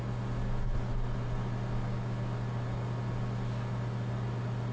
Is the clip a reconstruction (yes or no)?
no